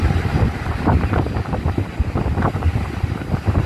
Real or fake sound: real